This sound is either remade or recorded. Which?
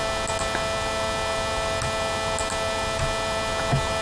recorded